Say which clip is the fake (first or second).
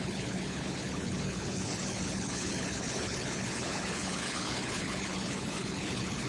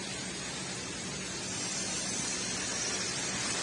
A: first